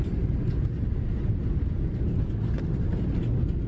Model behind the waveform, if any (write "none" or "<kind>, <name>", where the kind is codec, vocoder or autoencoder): none